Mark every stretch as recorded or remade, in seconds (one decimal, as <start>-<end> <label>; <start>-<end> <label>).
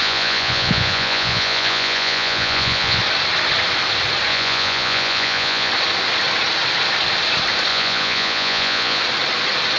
0.0-3.0 remade; 3.0-4.3 recorded; 4.3-5.7 remade; 5.7-7.7 recorded; 7.7-9.0 remade; 9.0-9.8 recorded